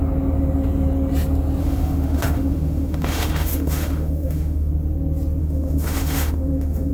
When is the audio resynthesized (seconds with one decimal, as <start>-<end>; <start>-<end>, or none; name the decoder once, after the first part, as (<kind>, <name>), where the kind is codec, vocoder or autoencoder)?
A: 1.6-4.7 (autoencoder, DAC-VAE); 5.4-6.9